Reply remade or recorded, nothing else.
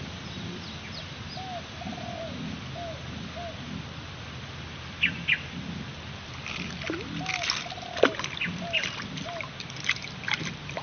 recorded